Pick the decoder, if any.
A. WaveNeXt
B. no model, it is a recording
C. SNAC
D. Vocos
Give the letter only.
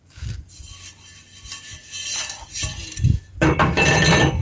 B